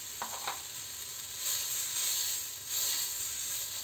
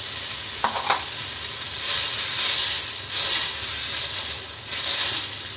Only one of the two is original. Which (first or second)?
first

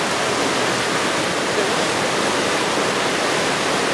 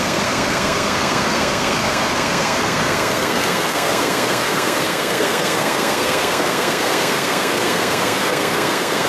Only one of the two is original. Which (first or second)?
first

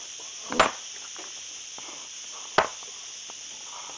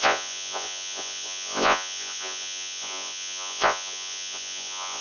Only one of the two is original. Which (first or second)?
first